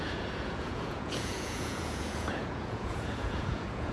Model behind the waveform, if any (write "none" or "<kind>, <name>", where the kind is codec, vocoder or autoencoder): vocoder, Vocos